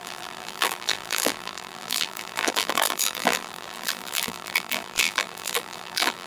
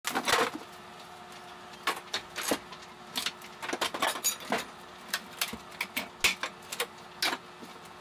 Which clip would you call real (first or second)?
second